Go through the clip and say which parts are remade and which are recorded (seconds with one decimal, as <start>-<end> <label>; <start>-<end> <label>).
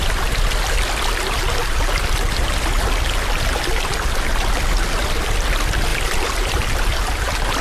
0.0-5.9 recorded; 5.9-6.8 remade; 6.8-7.6 recorded